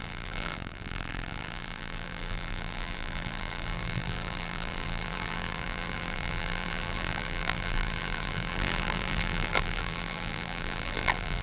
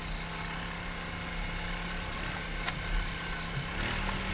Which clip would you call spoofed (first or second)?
first